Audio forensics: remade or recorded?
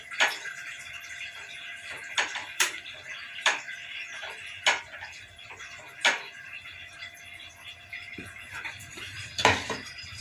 remade